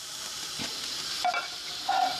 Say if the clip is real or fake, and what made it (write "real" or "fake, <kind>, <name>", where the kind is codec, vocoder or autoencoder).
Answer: fake, vocoder, BigVGAN v2